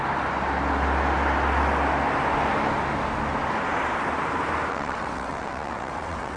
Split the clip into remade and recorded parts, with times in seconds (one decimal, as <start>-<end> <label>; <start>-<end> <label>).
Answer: 0.0-4.7 recorded; 4.7-6.4 remade

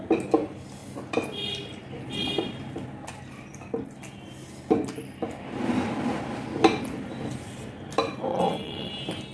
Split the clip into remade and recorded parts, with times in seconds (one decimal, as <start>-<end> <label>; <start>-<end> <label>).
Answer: 0.0-8.3 recorded; 8.3-8.9 remade; 8.9-9.3 recorded

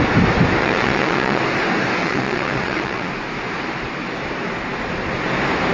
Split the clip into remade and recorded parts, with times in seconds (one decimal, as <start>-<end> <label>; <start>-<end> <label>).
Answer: 0.0-0.6 recorded; 0.6-1.4 remade; 1.4-2.0 recorded; 2.0-3.1 remade; 3.1-5.7 recorded

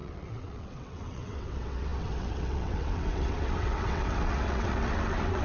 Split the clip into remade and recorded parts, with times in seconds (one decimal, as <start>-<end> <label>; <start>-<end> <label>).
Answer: 0.0-5.4 remade